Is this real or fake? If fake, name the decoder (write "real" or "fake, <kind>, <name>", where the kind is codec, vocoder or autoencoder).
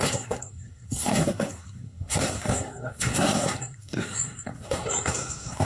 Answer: fake, codec, SNAC